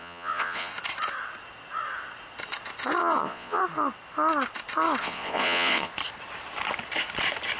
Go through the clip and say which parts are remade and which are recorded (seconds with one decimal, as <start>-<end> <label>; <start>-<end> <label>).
0.0-0.7 remade; 0.7-3.0 recorded; 3.0-3.6 remade; 3.6-5.0 recorded; 5.0-5.9 remade; 5.9-7.6 recorded